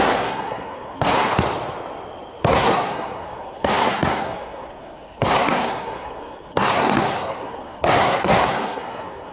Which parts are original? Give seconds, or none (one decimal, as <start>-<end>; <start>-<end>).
1.3-2.4